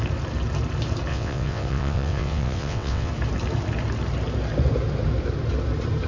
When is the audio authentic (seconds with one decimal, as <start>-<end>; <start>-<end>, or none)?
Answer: 0.0-1.1; 3.1-6.1